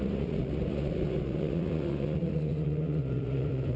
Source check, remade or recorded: remade